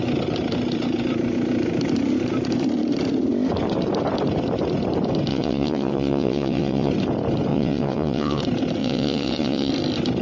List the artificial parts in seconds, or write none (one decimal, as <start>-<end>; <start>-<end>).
5.3-6.9; 7.5-8.4; 8.8-9.7